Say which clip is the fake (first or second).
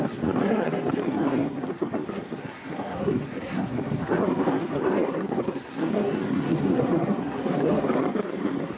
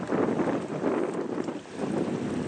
first